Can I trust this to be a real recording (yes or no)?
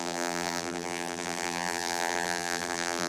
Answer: no